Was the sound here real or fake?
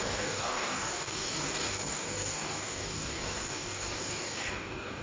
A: fake